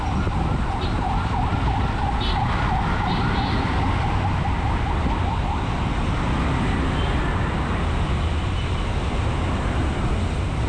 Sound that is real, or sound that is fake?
real